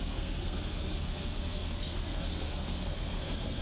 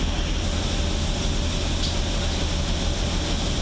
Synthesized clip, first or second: first